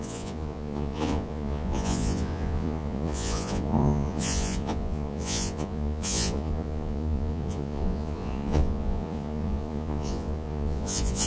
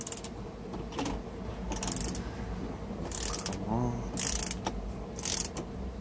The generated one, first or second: first